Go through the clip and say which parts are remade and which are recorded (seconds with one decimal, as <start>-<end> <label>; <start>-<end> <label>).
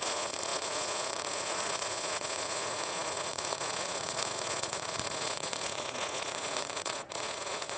0.0-7.8 remade